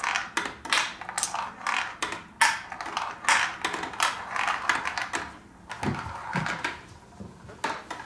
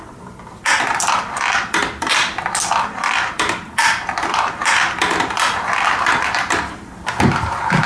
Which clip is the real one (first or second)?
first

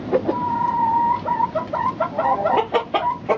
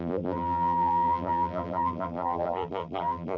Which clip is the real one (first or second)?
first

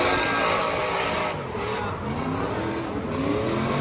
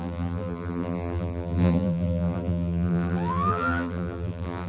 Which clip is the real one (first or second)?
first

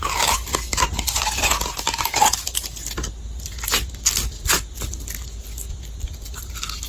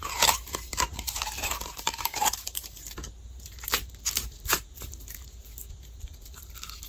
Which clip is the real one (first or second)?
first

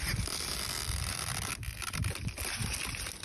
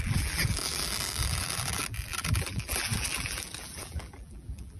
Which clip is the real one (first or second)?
first